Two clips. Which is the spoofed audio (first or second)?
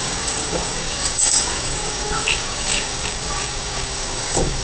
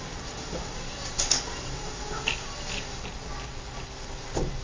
first